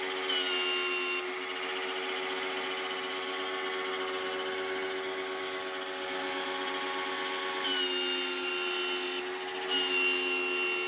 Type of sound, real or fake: real